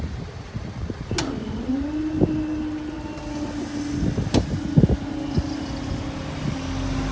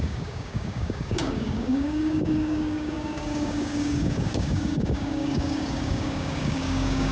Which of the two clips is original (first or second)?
first